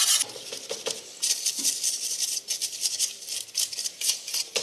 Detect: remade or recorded recorded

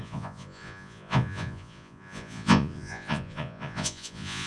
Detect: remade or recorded remade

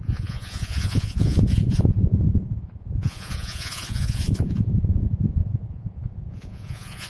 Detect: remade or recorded remade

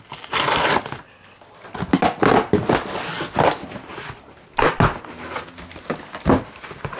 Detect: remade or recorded recorded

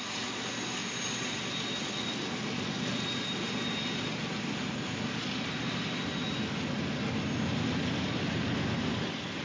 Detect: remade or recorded recorded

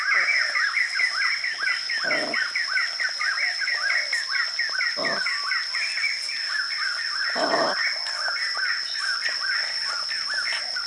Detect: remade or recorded recorded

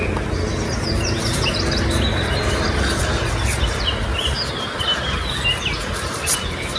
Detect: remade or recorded recorded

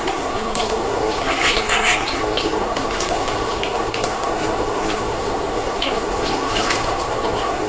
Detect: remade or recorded remade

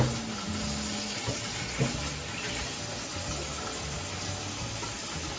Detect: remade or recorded recorded